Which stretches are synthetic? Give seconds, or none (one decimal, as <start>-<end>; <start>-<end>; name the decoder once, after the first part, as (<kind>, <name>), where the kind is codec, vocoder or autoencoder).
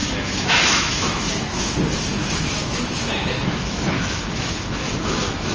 0.0-1.7 (autoencoder, DAC-VAE); 2.1-5.5